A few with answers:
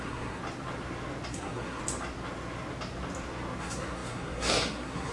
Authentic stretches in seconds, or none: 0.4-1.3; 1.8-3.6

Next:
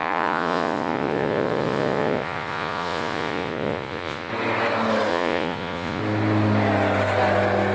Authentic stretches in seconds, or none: 4.3-5.1; 6.0-7.7

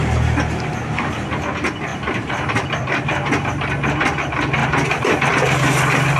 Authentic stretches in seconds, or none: 0.0-1.9; 2.9-4.6; 5.3-6.2